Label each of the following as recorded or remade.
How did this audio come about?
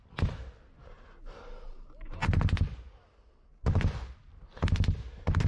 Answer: recorded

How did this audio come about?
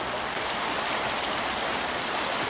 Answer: recorded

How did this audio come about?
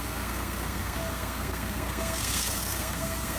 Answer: remade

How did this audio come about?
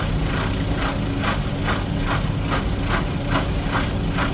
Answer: recorded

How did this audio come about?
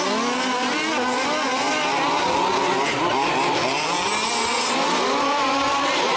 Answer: recorded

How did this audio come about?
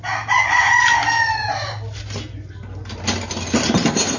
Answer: recorded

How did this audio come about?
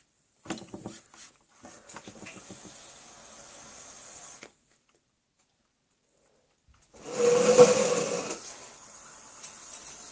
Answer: recorded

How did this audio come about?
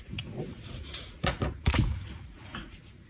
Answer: remade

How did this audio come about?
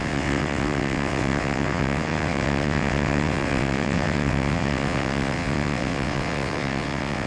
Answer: remade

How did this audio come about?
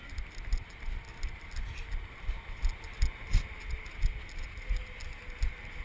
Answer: recorded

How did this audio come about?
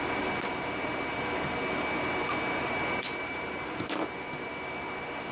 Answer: remade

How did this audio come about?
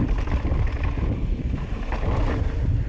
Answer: recorded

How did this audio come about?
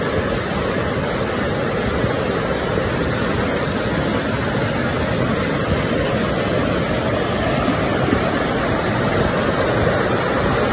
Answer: recorded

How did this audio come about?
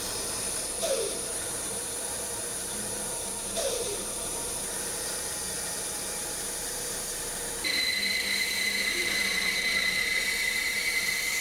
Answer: remade